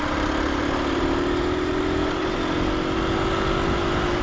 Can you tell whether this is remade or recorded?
recorded